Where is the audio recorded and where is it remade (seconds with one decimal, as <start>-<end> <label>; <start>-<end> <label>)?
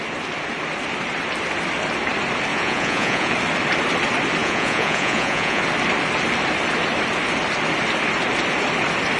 0.0-2.5 recorded; 2.5-3.3 remade; 3.3-4.4 recorded; 4.4-5.6 remade; 5.6-9.2 recorded